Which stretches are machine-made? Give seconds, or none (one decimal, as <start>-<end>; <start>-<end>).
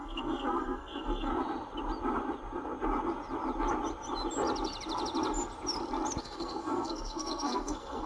0.0-1.3; 6.2-8.1